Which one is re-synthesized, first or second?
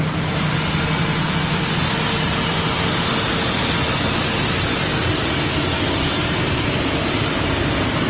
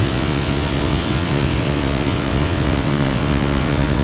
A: second